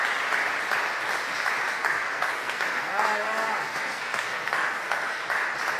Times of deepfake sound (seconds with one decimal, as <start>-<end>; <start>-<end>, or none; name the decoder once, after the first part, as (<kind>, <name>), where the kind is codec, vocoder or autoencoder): 1.7-5.2 (codec, SNAC)